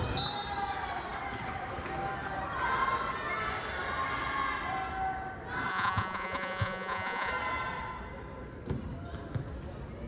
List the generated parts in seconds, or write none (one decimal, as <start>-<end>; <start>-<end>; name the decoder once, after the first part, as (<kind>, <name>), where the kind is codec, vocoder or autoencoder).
5.7-7.3 (vocoder, Vocos)